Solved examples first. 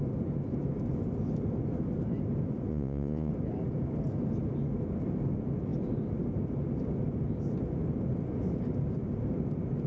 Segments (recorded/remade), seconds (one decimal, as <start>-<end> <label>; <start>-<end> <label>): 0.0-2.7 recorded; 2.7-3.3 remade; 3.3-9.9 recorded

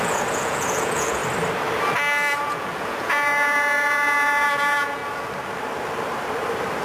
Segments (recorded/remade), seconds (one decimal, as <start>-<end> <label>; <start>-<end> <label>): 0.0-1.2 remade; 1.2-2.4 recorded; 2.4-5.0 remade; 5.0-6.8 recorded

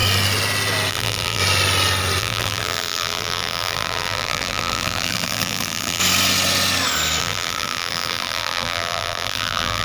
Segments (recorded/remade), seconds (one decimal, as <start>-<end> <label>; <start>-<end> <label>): 0.0-0.9 recorded; 0.9-1.4 remade; 1.4-2.2 recorded; 2.2-6.0 remade; 6.0-7.2 recorded; 7.2-9.8 remade

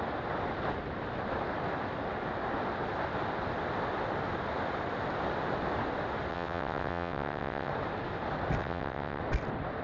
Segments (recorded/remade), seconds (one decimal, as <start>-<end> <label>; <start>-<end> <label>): 0.0-6.3 recorded; 6.3-7.7 remade; 7.7-8.6 recorded; 8.6-9.2 remade; 9.2-9.8 recorded

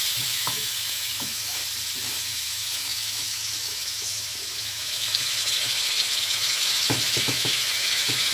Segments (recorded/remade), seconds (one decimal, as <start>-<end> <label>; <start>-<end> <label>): 0.0-1.6 remade; 1.6-2.1 recorded; 2.1-8.3 remade

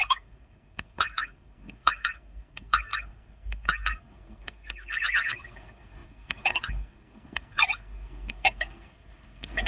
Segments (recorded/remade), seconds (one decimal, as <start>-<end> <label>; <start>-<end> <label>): 0.0-9.7 remade

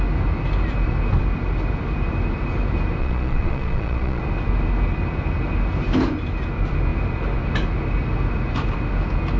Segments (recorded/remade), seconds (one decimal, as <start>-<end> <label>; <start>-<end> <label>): 0.0-3.0 recorded; 3.0-4.2 remade; 4.2-9.4 recorded

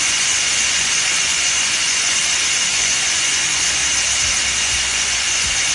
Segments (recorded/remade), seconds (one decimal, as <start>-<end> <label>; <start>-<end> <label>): 0.0-2.2 remade; 2.2-2.7 recorded; 2.7-3.8 remade; 3.8-4.6 recorded; 4.6-5.7 remade